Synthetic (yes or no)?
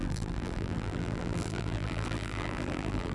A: yes